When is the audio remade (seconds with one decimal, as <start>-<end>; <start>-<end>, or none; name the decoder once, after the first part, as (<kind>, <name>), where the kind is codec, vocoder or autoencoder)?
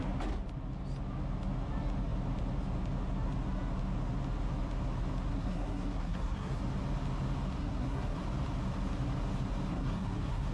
5.3-6.6 (codec, SNAC); 7.6-8.2; 9.7-10.5